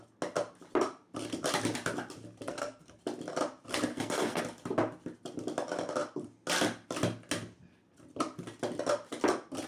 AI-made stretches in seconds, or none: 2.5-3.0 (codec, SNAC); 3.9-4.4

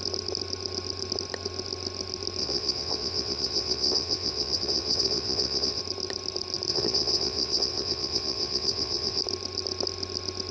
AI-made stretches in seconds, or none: 2.4-5.8 (vocoder, WaveNeXt); 6.7-9.2

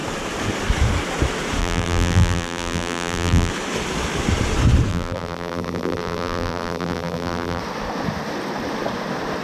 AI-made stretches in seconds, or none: 1.6-3.5 (vocoder, BigVGAN v2); 4.9-7.6

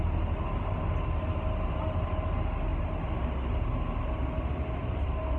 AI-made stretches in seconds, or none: none